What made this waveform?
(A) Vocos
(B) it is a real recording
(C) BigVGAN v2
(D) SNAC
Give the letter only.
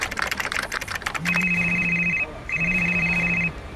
C